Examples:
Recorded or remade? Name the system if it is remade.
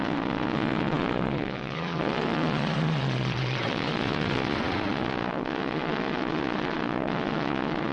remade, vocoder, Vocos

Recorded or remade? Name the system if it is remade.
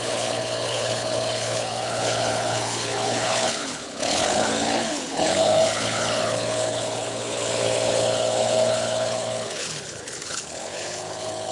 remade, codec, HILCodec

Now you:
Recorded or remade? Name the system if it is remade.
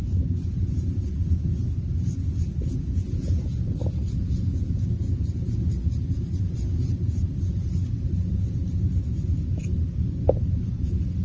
recorded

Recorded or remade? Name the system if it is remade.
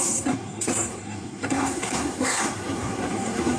remade, codec, SNAC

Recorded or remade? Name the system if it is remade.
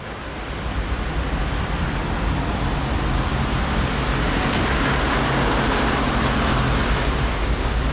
recorded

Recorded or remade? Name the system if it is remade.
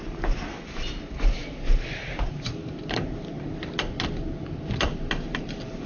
recorded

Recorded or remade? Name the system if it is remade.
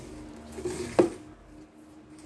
recorded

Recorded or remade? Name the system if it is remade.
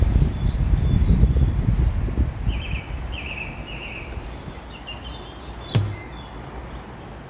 recorded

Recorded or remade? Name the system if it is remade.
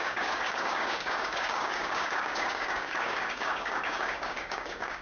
remade, codec, DAC